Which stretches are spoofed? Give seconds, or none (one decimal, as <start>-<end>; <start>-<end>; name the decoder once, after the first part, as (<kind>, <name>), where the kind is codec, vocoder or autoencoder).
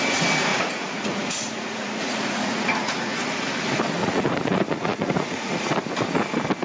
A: 0.5-3.2 (vocoder, Vocos); 4.0-5.7